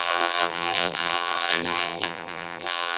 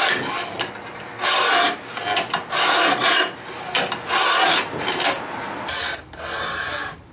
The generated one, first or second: first